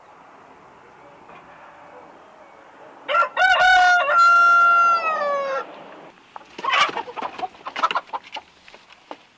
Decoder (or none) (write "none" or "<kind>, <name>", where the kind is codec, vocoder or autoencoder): none